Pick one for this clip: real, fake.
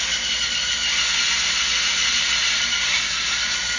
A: real